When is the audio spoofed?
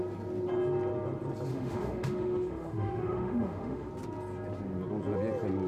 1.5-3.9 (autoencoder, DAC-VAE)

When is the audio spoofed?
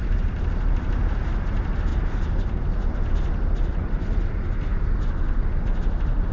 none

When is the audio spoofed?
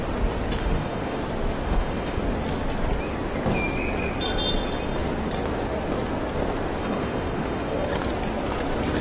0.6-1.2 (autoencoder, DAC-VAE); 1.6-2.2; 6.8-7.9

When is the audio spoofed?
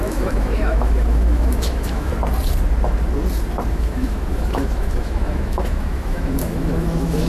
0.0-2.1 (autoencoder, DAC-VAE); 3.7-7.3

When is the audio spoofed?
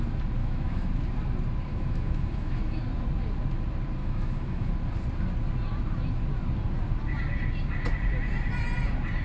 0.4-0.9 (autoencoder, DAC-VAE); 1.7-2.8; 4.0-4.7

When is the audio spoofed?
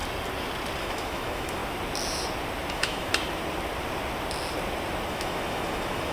0.8-1.6 (autoencoder, DAC-VAE); 2.7-3.1; 5.1-6.1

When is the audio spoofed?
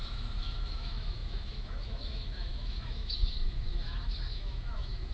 0.0-5.1 (autoencoder, DAC-VAE)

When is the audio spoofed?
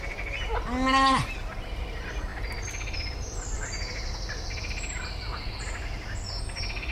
none